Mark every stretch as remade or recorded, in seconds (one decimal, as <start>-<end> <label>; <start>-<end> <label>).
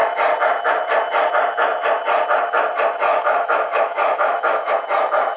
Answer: 0.0-3.1 recorded; 3.1-4.7 remade; 4.7-5.4 recorded